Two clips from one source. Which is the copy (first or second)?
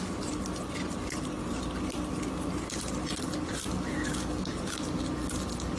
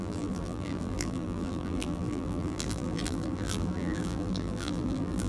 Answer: second